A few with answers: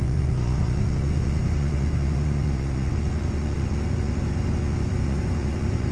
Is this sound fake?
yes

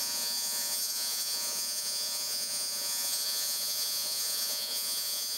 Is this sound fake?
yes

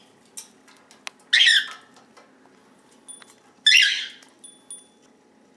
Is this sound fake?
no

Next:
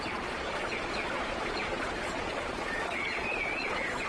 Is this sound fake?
yes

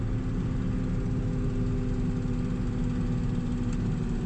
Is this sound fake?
no